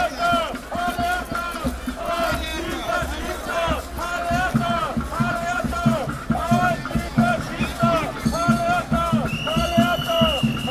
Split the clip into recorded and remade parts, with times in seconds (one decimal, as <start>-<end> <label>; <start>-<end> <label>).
0.0-10.7 recorded